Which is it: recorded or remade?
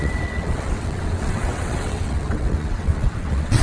remade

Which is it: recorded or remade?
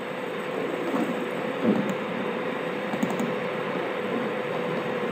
remade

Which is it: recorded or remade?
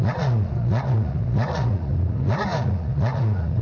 remade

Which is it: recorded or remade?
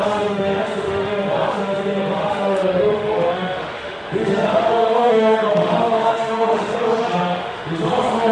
remade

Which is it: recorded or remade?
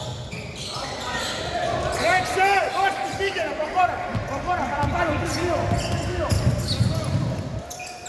recorded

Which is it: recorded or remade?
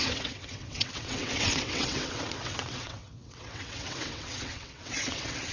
remade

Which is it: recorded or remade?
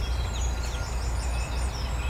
recorded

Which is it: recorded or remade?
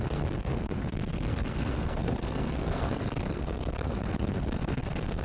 remade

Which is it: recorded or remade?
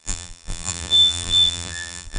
remade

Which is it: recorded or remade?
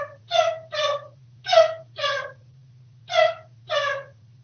remade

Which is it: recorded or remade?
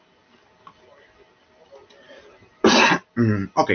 recorded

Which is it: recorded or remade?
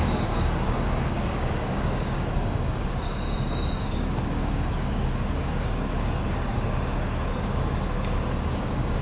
remade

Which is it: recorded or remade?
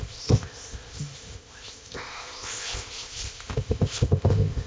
remade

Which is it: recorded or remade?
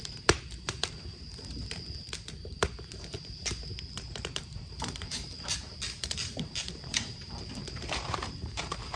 remade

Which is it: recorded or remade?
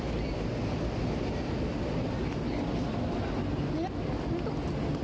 recorded